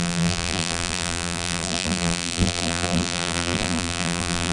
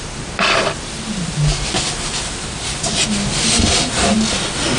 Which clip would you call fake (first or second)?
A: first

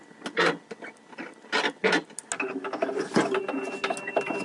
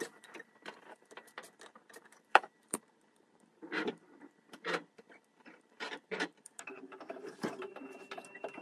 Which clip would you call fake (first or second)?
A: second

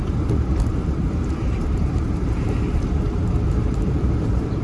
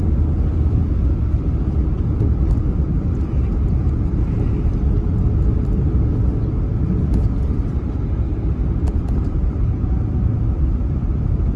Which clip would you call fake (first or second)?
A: first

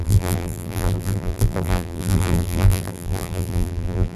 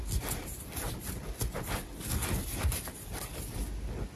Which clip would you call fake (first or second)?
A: first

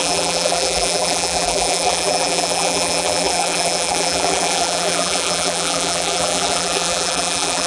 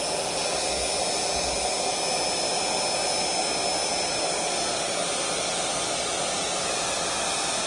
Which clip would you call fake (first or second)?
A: first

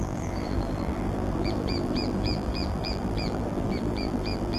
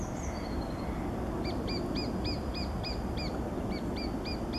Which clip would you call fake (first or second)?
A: first